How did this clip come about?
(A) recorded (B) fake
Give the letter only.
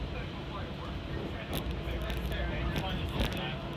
A